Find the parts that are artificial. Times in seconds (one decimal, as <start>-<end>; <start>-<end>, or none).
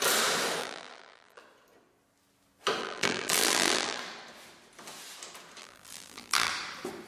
0.6-1.4; 2.8-4.0; 5.6-6.5